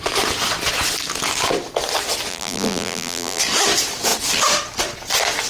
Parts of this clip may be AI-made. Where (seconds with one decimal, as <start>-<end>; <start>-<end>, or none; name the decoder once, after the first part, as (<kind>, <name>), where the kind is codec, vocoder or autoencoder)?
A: 2.3-3.4 (vocoder, BigVGAN v2)